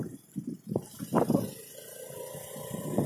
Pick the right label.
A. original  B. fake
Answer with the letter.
A